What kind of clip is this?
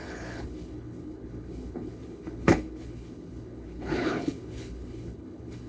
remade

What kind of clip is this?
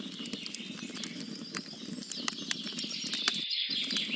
recorded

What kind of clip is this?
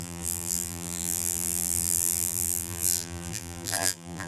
remade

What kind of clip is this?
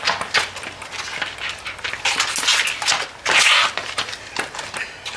recorded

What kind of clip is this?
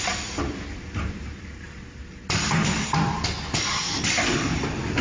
recorded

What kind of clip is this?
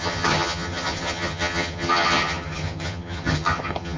remade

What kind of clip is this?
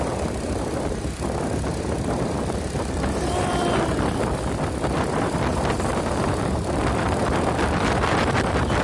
remade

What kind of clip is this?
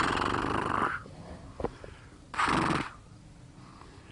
recorded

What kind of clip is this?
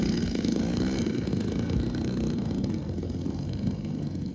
remade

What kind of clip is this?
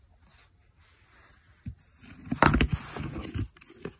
recorded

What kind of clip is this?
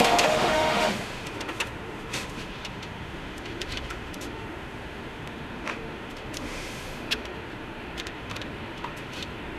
remade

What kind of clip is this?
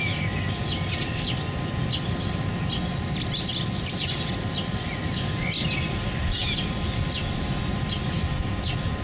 recorded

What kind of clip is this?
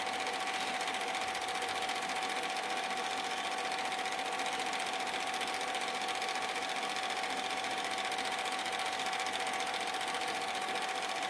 recorded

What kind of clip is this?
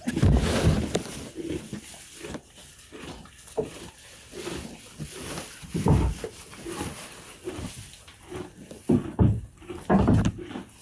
recorded